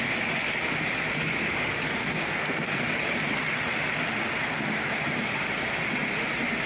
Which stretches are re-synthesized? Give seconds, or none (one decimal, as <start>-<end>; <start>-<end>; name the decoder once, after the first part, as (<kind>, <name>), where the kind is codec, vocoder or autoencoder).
2.0-2.8 (codec, SNAC)